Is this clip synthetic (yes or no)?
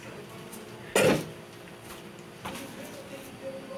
no